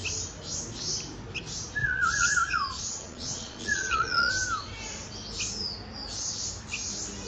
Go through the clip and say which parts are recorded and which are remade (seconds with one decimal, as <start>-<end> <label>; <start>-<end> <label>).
0.0-1.8 recorded; 1.8-4.3 remade; 4.3-7.3 recorded